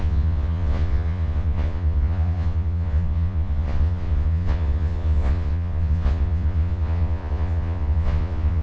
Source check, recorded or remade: remade